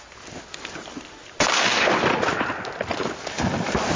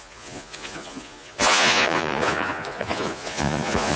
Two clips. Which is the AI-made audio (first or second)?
second